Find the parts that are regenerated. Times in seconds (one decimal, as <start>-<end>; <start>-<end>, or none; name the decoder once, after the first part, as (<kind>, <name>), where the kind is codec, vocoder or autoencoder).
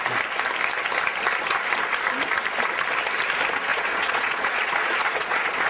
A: 3.7-5.7 (vocoder, Vocos)